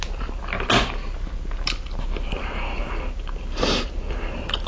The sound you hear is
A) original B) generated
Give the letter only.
A